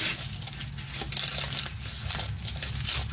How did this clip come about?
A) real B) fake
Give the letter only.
A